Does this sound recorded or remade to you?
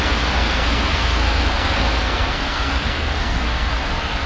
remade